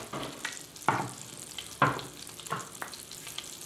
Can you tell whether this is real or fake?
real